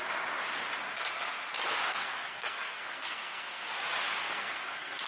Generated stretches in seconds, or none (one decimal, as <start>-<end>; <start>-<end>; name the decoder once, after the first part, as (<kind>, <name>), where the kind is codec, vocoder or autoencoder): 1.9-3.7 (codec, SNAC); 4.2-5.1